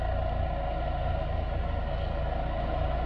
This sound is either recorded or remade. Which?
recorded